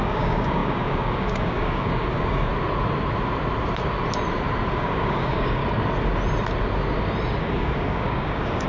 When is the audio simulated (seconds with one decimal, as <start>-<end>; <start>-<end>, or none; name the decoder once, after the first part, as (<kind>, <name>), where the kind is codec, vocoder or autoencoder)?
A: 0.0-2.5 (codec, DAC); 4.7-5.6; 7.4-8.7